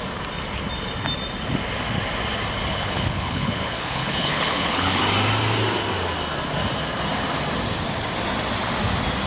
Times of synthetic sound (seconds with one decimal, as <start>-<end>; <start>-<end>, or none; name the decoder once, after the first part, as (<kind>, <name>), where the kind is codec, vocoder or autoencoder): 2.7-5.0 (codec, HILCodec)